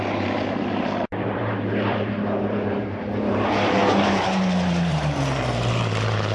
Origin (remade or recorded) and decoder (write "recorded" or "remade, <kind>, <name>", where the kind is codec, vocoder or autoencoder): remade, vocoder, BigVGAN v2